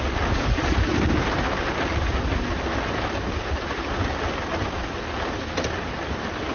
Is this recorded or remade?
recorded